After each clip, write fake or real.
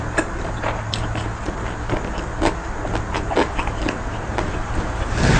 real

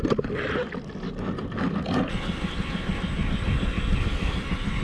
real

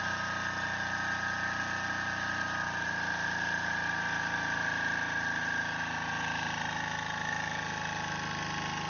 real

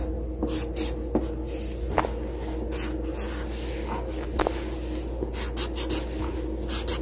real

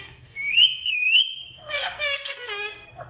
fake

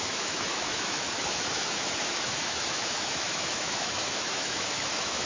fake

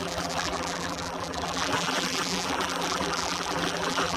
fake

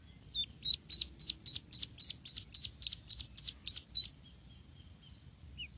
real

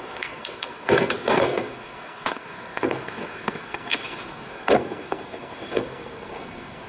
fake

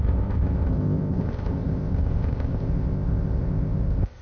fake